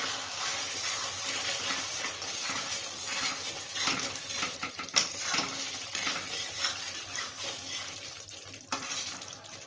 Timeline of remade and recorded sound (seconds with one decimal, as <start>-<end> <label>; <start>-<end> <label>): 0.0-9.7 remade